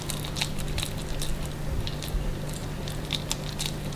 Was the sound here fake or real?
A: real